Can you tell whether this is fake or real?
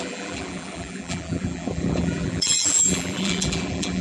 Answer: fake